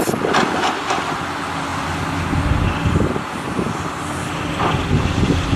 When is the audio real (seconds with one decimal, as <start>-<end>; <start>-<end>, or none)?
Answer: 0.0-5.6